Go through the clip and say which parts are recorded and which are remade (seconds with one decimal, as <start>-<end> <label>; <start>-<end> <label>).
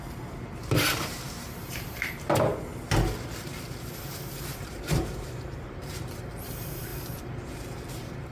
0.0-2.7 remade; 2.7-4.7 recorded; 4.7-6.9 remade; 6.9-7.9 recorded; 7.9-8.3 remade